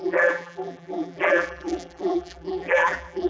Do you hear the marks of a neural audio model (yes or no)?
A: yes